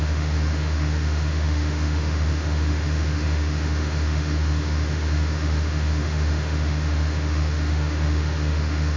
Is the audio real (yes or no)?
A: no